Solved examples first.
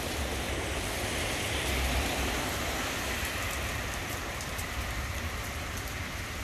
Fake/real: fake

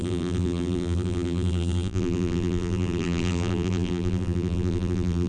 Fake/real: fake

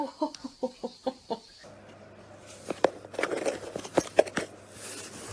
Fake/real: real